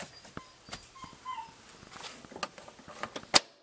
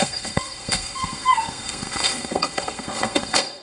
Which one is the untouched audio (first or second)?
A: first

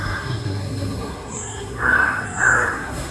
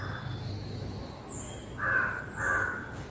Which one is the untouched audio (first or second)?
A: second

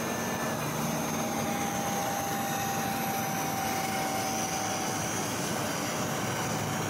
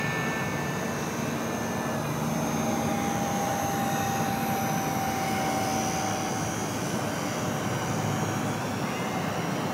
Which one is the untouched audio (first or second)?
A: second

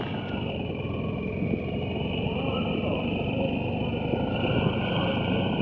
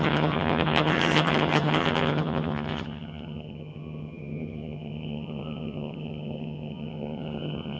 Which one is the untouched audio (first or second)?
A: first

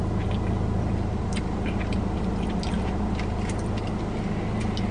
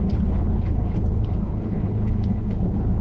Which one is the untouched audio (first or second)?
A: first